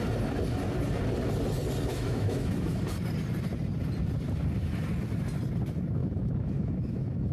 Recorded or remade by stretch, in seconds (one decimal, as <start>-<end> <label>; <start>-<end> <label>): 0.0-1.9 recorded; 1.9-2.8 remade; 2.8-6.0 recorded; 6.0-7.3 remade